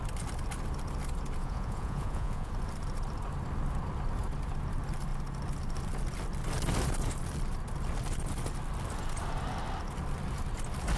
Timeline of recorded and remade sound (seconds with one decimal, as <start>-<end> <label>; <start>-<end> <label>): 0.0-1.4 recorded; 1.4-2.5 remade; 2.5-11.0 recorded